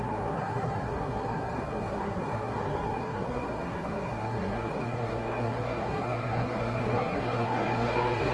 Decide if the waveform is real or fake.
fake